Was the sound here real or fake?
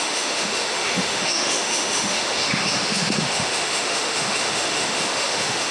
fake